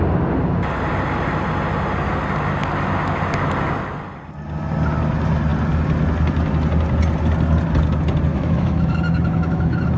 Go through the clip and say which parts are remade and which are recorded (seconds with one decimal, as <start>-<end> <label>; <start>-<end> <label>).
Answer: 0.0-8.3 recorded; 8.3-10.0 remade